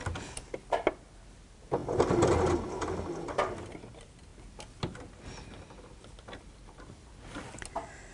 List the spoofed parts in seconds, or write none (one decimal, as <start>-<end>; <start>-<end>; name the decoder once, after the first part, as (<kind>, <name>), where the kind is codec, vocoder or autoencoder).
none